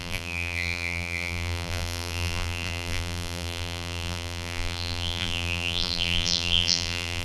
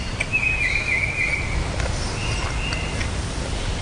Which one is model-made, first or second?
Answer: first